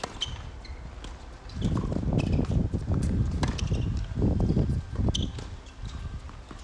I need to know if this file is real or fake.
real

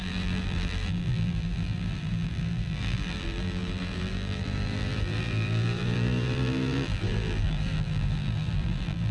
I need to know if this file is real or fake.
fake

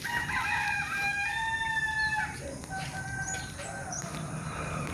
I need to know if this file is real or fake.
fake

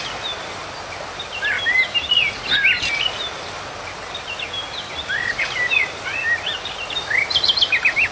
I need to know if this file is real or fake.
real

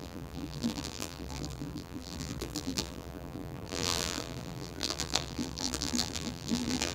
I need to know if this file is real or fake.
fake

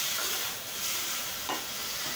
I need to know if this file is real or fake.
fake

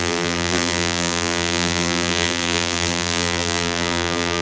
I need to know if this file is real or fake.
fake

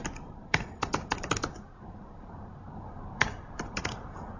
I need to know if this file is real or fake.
fake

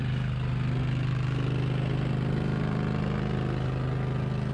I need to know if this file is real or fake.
real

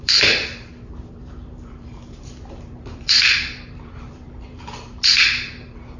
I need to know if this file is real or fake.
fake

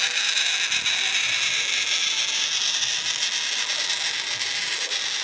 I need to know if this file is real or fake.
real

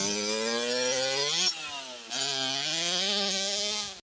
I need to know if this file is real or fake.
real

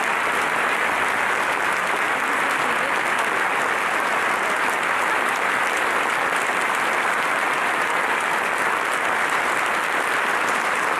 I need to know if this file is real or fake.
real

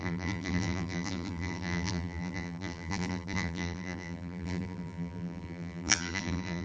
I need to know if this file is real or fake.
fake